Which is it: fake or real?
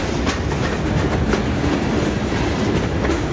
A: real